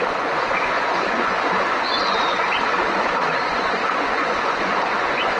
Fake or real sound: fake